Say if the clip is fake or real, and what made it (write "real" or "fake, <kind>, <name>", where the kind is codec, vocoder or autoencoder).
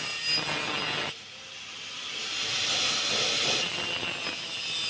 real